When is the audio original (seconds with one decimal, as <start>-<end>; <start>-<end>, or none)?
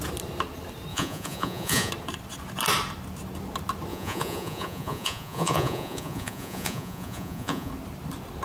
0.0-0.9; 1.9-3.9; 7.7-8.4